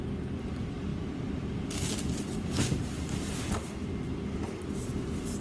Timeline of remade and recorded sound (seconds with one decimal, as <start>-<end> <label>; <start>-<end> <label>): 0.0-5.4 recorded